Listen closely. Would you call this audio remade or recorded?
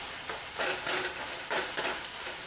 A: recorded